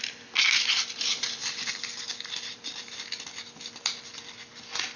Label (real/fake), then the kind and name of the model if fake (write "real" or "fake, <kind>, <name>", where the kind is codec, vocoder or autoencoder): real